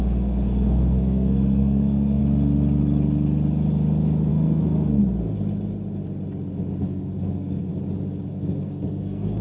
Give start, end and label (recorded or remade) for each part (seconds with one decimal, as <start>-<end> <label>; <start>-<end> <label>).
0.0-2.2 remade; 2.2-4.3 recorded; 4.3-5.0 remade; 5.0-6.8 recorded; 6.8-7.7 remade; 7.7-8.3 recorded; 8.3-9.4 remade